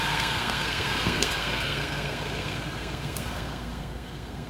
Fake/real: fake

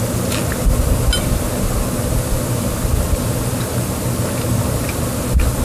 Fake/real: real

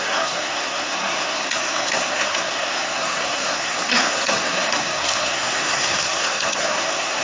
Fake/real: fake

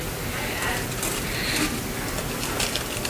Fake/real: real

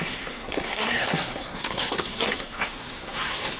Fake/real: fake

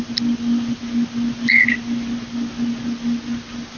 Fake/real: real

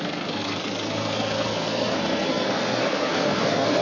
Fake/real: fake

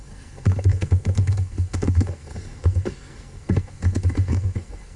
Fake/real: fake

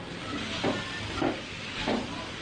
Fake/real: real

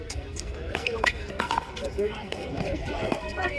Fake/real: fake